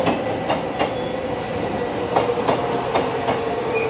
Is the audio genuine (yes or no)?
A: yes